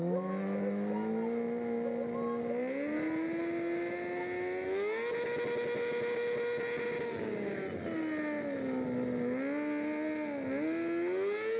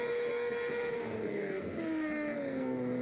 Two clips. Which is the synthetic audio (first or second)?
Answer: second